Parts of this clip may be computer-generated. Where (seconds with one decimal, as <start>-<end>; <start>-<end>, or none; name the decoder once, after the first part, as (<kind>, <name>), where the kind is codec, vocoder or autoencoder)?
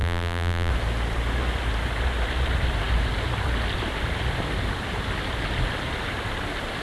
0.0-0.7 (vocoder, BigVGAN v2)